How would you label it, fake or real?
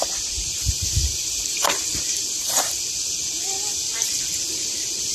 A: real